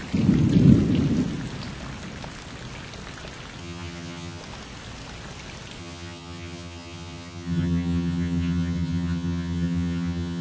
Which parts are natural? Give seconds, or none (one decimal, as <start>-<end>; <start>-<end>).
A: 0.0-3.6; 4.4-5.8